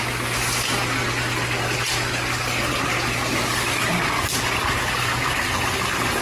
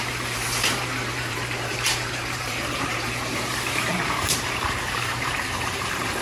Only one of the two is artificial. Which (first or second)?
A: second